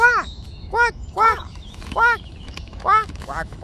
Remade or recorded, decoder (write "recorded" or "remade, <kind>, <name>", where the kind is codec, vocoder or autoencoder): remade, autoencoder, DAC-VAE